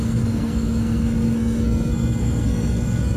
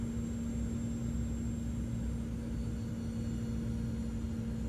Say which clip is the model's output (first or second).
first